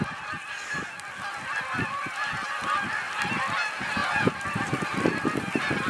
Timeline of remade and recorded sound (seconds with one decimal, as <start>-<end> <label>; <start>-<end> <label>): 0.0-2.0 recorded; 2.0-2.6 remade; 2.6-4.0 recorded; 4.0-5.4 remade; 5.4-5.9 recorded